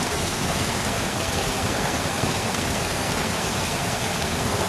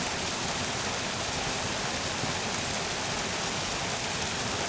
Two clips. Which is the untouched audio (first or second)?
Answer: second